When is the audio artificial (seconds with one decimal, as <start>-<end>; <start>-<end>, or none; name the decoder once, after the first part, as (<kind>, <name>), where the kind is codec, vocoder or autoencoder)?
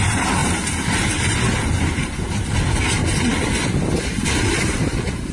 none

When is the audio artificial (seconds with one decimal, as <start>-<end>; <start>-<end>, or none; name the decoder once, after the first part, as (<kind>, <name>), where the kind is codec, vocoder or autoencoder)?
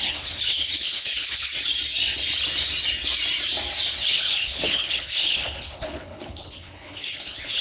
0.0-1.5 (codec, HILCodec); 4.0-7.6